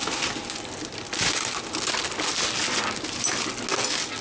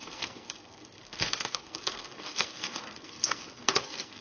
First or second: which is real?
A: first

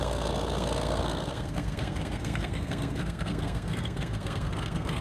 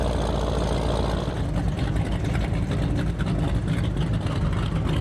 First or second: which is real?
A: second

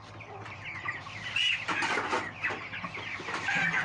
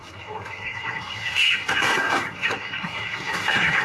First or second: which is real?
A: first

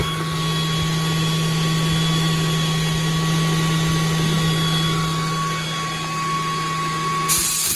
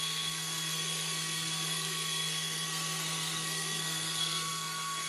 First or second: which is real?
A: first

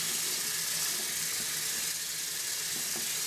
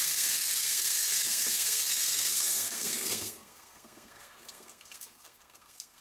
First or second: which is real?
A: first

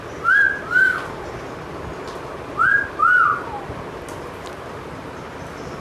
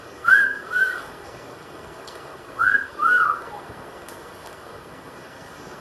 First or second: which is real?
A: first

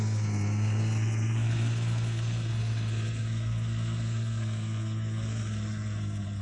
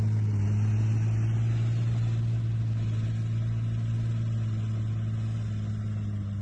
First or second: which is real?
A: second